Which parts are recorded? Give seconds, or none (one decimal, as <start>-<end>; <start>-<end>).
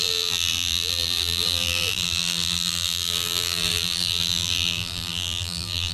none